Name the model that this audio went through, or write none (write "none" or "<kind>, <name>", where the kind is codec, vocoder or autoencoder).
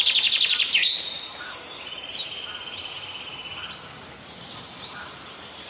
vocoder, BigVGAN v2